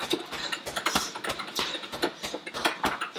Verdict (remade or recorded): recorded